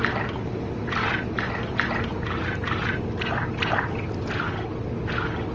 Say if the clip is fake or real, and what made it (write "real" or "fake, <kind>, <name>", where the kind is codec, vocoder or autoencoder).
real